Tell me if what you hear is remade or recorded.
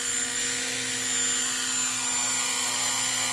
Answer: recorded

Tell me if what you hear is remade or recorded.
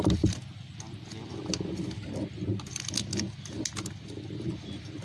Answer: recorded